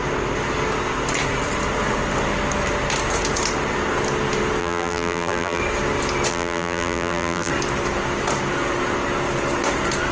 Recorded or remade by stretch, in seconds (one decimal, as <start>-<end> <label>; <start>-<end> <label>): 0.0-4.6 recorded; 4.6-5.6 remade; 5.6-6.3 recorded; 6.3-7.5 remade; 7.5-10.1 recorded